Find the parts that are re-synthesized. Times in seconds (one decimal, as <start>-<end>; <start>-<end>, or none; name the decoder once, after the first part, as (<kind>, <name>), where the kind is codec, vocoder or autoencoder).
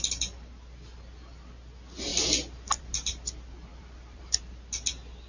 3.7-4.4 (vocoder, BigVGAN v2)